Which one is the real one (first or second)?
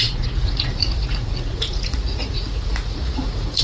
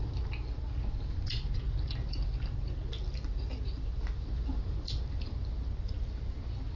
second